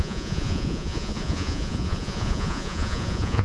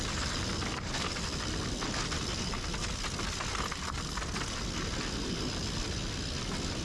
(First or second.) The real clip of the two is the second